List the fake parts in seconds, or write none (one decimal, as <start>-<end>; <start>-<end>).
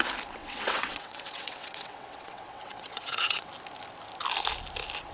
0.4-3.5